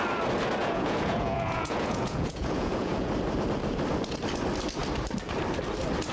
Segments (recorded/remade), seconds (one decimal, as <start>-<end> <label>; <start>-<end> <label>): 0.0-0.6 recorded; 0.6-3.1 remade; 3.1-6.1 recorded